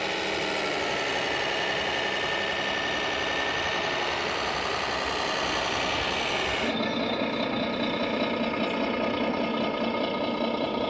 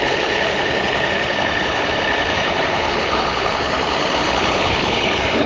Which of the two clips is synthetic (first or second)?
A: second